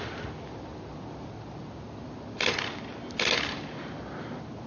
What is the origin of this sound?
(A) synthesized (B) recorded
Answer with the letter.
B